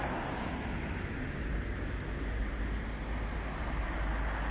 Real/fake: real